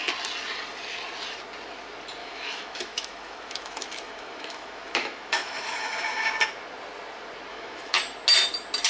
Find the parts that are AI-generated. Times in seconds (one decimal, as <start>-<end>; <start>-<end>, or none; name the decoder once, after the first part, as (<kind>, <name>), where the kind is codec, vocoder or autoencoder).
2.2-6.3 (autoencoder, DAC-VAE); 7.5-8.0